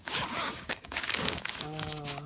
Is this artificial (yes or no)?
yes